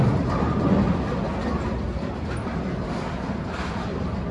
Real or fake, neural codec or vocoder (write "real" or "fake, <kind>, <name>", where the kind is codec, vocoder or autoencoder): real